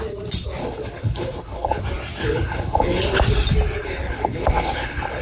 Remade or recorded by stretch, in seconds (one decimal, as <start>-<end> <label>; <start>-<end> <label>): 0.0-0.6 recorded; 0.6-1.8 remade; 1.8-2.2 recorded; 2.2-3.2 remade; 3.2-3.8 recorded; 3.8-5.2 remade